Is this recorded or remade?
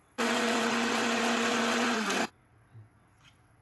remade